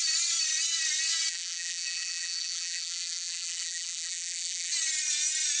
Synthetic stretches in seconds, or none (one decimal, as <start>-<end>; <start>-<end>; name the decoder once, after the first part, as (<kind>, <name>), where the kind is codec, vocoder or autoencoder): 1.3-4.7 (vocoder, BigVGAN v2)